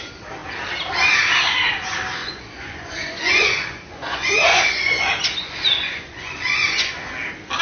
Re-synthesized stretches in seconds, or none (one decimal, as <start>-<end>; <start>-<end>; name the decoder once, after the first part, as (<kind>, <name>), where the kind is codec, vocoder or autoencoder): 2.2-5.0 (vocoder, Vocos); 5.4-6.9